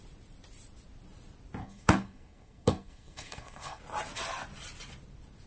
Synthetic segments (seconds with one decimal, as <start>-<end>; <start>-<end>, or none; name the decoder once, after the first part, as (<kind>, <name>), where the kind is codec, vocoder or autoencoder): 1.6-3.8 (codec, SNAC)